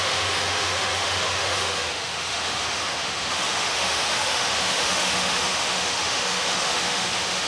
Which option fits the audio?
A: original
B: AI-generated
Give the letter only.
B